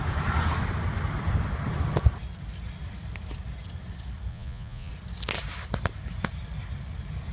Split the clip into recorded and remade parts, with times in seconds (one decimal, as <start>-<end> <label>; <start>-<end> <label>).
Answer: 0.0-4.3 recorded; 4.3-4.9 remade; 4.9-7.3 recorded